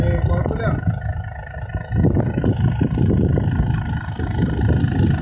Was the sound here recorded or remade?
recorded